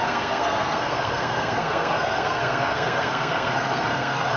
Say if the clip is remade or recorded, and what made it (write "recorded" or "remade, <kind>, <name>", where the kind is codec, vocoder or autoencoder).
remade, codec, SNAC